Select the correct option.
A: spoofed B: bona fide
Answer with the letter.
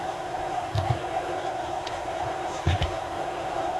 A